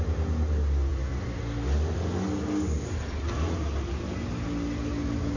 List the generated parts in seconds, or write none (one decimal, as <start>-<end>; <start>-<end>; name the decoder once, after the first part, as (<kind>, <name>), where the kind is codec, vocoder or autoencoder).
none